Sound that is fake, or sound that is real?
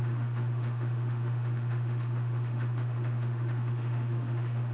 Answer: fake